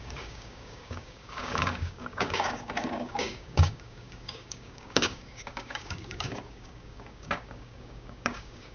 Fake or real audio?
fake